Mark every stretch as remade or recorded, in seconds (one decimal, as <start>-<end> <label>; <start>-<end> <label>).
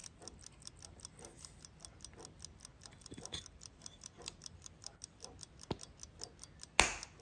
0.0-2.7 recorded; 2.7-5.3 remade; 5.3-7.2 recorded